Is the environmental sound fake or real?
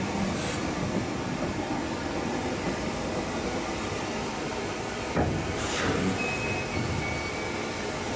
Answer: real